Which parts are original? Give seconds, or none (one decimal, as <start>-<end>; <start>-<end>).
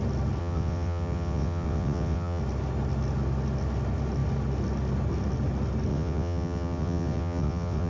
0.0-0.4; 2.4-5.9